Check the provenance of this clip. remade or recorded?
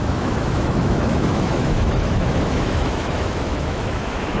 remade